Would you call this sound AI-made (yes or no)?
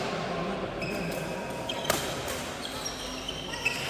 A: no